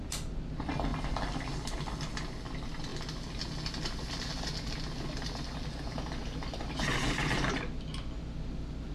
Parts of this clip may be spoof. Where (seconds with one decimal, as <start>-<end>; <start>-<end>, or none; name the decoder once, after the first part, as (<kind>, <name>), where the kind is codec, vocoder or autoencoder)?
none